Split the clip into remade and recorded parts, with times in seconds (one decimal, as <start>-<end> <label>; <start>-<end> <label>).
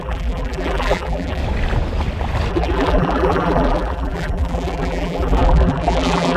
0.0-1.4 remade; 1.4-2.5 recorded; 2.5-6.4 remade